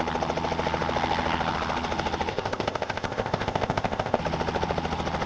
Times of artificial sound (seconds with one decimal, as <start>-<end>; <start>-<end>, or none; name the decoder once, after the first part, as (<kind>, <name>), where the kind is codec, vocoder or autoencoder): 2.3-4.2 (codec, ZipCodec)